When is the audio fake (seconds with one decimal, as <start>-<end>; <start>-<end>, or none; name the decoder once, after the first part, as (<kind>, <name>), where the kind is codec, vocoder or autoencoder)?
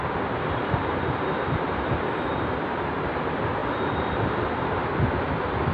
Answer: none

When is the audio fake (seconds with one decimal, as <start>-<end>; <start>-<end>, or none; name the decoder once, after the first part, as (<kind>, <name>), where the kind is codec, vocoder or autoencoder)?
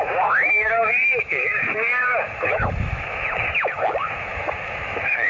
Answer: 0.0-5.3 (autoencoder, DAC-VAE)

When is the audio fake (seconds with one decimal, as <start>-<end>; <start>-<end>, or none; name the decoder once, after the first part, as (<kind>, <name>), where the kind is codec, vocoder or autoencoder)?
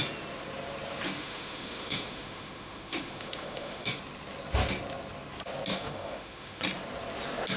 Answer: 1.2-4.0 (autoencoder, DAC-VAE); 5.7-6.6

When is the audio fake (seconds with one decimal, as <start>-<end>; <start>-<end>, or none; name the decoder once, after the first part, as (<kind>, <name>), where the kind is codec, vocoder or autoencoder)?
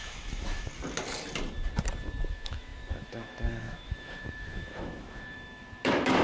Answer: 0.0-0.7 (autoencoder, DAC-VAE); 2.3-6.2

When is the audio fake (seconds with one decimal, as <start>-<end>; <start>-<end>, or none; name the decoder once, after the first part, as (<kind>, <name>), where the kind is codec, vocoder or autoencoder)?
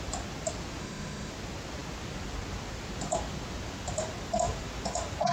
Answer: 0.8-1.3 (autoencoder, DAC-VAE)